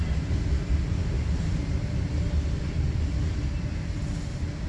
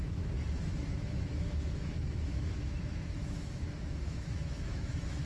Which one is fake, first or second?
second